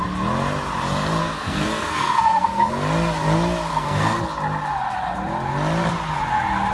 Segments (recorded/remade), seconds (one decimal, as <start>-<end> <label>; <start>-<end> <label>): 0.0-1.2 recorded; 1.2-2.7 remade; 2.7-3.7 recorded; 3.7-4.2 remade; 4.2-6.7 recorded